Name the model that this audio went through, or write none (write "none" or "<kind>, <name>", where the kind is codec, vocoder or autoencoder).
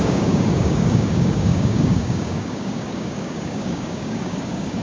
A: codec, DAC